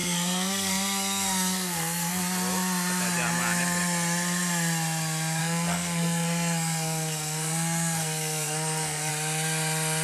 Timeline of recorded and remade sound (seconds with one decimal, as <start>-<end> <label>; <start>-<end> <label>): 0.0-2.2 remade; 2.2-5.4 recorded; 5.4-9.1 remade; 9.1-10.0 recorded